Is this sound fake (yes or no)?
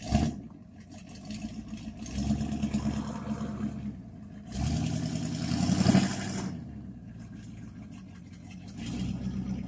no